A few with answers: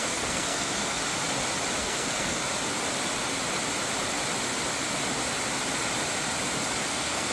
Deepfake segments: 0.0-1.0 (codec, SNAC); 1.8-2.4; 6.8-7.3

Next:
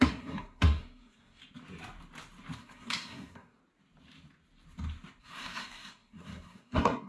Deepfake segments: 0.0-1.4 (codec, SNAC); 2.6-3.6; 5.2-7.1

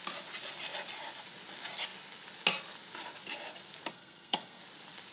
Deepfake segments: 3.9-4.6 (codec, SNAC)